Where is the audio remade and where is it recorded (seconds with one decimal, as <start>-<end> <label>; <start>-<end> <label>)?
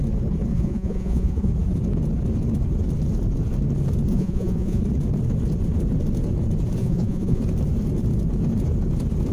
0.0-0.5 recorded; 0.5-1.5 remade; 1.5-4.1 recorded; 4.1-4.8 remade; 4.8-6.8 recorded; 6.8-7.4 remade; 7.4-9.3 recorded